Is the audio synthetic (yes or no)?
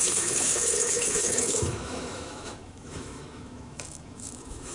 yes